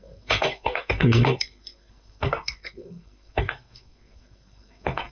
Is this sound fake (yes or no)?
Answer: yes